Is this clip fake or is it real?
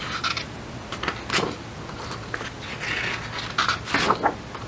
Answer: real